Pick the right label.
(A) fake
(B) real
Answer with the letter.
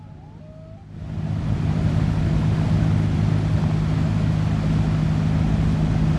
B